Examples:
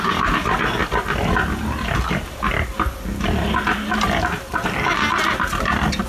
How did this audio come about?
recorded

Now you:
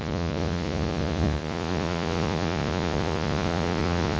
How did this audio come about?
remade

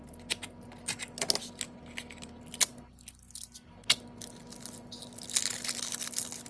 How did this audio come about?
recorded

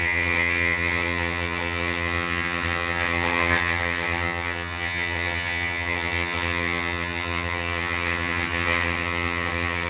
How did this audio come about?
remade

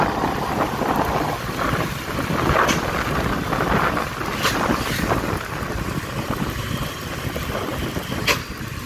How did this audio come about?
recorded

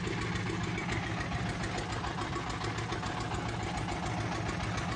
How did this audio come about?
recorded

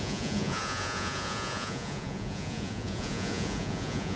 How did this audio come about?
remade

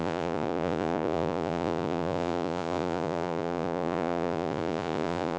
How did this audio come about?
remade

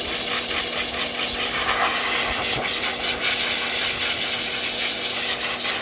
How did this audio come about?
recorded